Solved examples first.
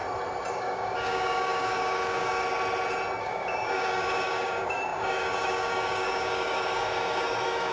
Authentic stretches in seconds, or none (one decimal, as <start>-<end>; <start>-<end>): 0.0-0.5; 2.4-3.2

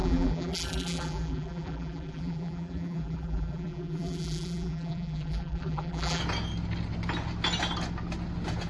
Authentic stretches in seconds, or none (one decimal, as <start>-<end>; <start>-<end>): 6.2-8.7

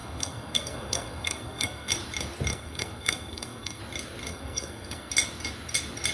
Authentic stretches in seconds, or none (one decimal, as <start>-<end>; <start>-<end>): 1.9-2.5; 3.8-4.3; 5.1-6.1